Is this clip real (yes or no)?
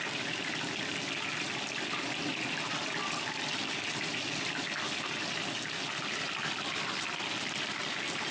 yes